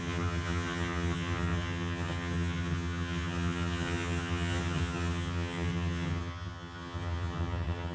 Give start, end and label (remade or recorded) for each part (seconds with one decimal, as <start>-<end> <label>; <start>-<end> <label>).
0.0-7.9 remade